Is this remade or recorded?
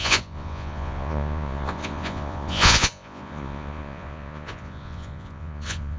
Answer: remade